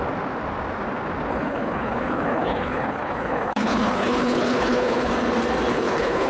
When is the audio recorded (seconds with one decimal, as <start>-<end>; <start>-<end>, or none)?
0.0-1.3; 5.1-5.7